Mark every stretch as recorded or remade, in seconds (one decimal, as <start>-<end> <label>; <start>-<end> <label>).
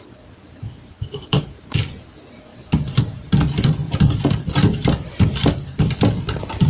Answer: 0.0-0.8 recorded; 0.8-1.7 remade; 1.7-2.5 recorded; 2.5-3.3 remade; 3.3-6.7 recorded